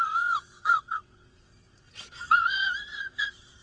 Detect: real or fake fake